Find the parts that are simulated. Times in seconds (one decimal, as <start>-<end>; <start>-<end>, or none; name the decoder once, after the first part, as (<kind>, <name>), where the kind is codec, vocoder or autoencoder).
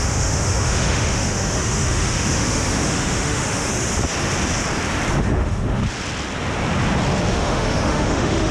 0.0-3.7 (autoencoder, DAC-VAE); 5.2-5.8; 7.3-8.5